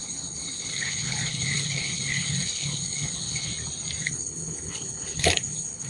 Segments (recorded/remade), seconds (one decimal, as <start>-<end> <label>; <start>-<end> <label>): 0.0-3.5 remade; 3.5-4.0 recorded; 4.0-5.9 remade